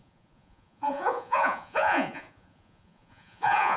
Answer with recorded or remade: remade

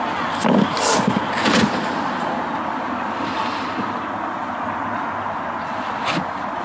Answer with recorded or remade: recorded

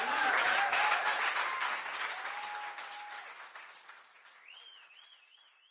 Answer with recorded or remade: recorded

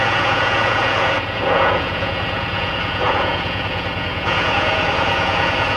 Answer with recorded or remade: remade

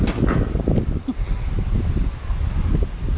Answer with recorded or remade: recorded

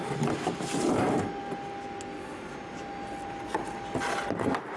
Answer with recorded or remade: recorded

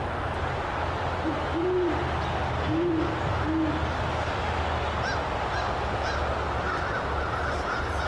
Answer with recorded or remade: recorded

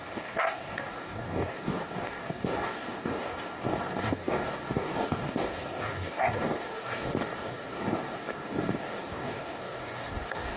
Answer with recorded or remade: remade